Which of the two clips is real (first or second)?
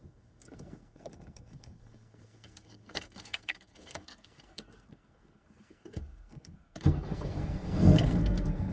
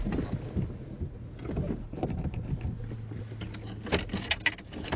second